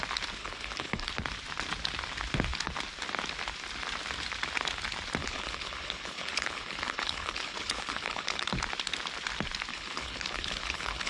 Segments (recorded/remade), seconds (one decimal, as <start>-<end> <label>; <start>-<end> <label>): 0.0-0.4 recorded; 0.4-1.1 remade; 1.1-5.2 recorded; 5.2-8.5 remade; 8.5-9.7 recorded; 9.7-11.1 remade